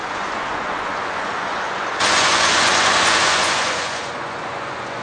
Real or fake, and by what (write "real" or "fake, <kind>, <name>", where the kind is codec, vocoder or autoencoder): fake, vocoder, Vocos